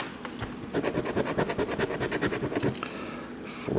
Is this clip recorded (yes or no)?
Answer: yes